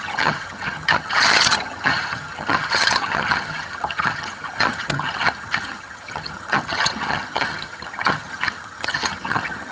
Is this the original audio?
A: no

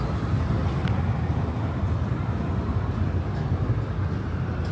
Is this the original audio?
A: yes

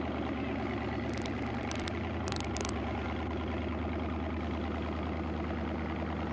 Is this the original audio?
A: yes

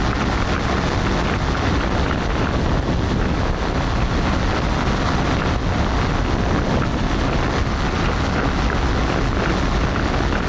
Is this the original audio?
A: yes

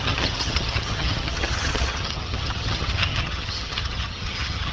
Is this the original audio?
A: no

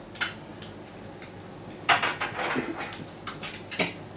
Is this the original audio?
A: yes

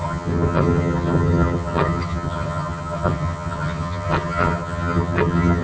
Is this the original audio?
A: no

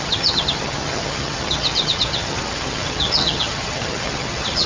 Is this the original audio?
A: no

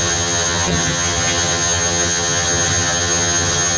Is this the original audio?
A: no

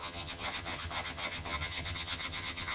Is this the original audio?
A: no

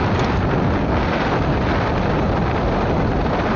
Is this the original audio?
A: yes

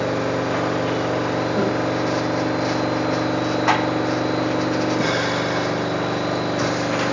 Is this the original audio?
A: yes